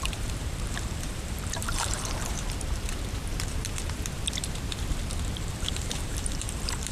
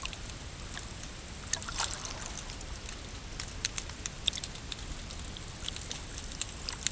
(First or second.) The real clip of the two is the second